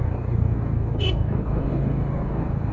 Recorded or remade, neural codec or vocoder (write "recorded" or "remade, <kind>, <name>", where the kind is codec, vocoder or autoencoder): remade, codec, DAC